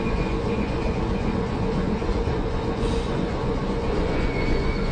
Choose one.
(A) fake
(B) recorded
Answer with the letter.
A